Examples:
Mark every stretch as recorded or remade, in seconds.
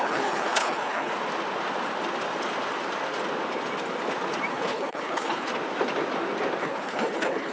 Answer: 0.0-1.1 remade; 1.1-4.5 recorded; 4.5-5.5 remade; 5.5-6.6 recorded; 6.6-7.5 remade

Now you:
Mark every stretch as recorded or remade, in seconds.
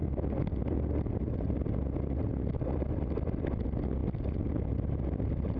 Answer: 0.0-5.6 recorded